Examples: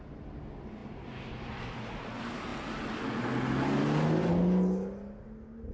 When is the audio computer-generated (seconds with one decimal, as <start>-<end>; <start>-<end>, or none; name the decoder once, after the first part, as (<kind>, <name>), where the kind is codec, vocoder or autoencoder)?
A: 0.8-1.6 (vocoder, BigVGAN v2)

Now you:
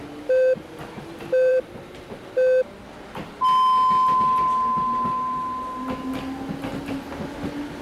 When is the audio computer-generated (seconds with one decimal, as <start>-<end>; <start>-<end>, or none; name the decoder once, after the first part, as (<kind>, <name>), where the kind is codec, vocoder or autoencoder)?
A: 1.5-2.2 (vocoder, BigVGAN v2)

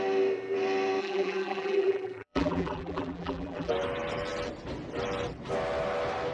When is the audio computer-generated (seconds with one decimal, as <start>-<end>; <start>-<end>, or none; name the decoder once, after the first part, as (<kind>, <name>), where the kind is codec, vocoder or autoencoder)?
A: 1.0-3.7 (vocoder, BigVGAN v2)

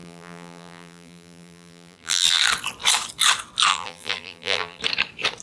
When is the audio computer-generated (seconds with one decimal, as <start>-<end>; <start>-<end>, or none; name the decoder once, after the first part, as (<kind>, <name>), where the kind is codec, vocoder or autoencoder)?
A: 0.0-2.4 (vocoder, BigVGAN v2); 3.7-4.8

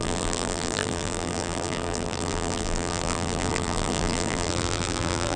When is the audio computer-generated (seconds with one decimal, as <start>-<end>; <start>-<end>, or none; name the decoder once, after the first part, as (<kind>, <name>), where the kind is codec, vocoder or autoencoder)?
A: 0.0-5.4 (vocoder, BigVGAN v2)